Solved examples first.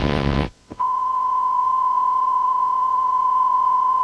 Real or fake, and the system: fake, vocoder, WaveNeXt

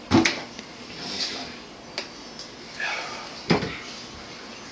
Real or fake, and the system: real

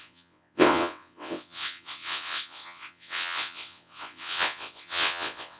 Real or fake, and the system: fake, vocoder, WaveNeXt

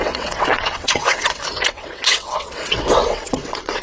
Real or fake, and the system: fake, vocoder, WaveNeXt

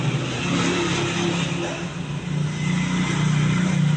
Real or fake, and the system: real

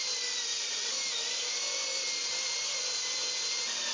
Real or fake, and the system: real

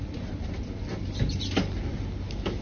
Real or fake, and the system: real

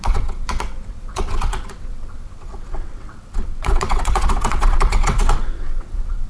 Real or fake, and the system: fake, vocoder, WaveNeXt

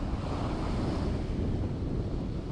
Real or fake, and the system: real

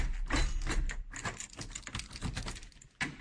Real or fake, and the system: real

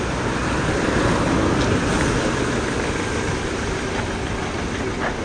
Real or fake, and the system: real